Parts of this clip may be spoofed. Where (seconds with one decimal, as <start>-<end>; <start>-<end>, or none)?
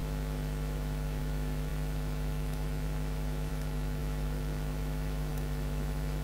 0.0-6.2